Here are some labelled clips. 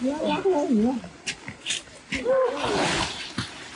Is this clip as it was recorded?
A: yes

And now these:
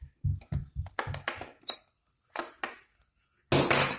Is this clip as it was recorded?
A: yes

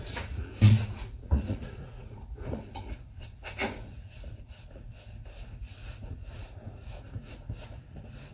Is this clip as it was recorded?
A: no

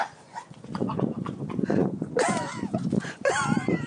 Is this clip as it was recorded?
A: no